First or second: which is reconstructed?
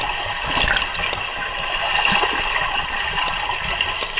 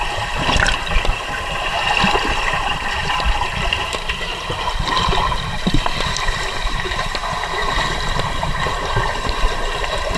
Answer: second